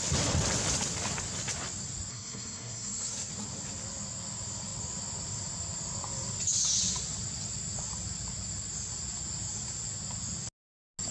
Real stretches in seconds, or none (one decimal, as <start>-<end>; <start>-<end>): 0.0-2.1; 3.3-11.1